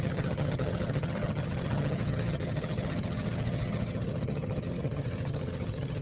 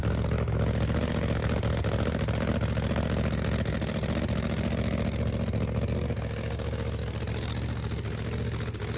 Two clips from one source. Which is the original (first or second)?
second